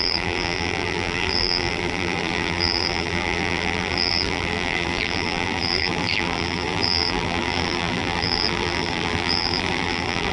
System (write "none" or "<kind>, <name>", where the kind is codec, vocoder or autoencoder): vocoder, BigVGAN v2